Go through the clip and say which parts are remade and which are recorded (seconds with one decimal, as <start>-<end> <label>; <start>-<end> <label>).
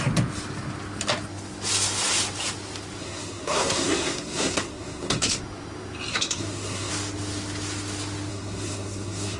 0.0-3.0 recorded; 3.0-5.4 remade; 5.4-6.1 recorded; 6.1-6.9 remade; 6.9-8.3 recorded; 8.3-9.4 remade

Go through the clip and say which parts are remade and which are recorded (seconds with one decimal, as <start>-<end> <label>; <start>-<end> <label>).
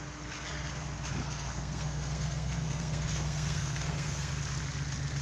0.0-1.2 recorded; 1.2-4.3 remade; 4.3-5.2 recorded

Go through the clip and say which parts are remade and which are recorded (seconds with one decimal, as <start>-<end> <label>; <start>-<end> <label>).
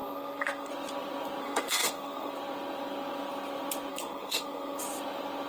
0.0-0.7 remade; 0.7-1.4 recorded; 1.4-2.3 remade; 2.3-3.9 recorded; 3.9-4.8 remade; 4.8-5.5 recorded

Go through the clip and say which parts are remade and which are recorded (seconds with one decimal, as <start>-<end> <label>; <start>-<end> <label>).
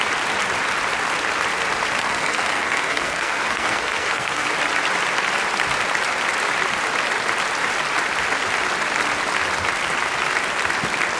0.0-2.0 recorded; 2.0-4.5 remade; 4.5-11.2 recorded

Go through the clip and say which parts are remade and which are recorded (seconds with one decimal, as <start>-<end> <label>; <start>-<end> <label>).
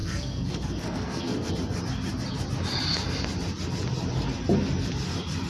0.0-1.5 remade; 1.5-5.5 recorded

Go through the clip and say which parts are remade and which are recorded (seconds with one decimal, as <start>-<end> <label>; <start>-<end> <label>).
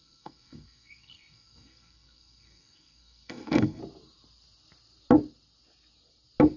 0.0-3.8 remade; 3.8-6.6 recorded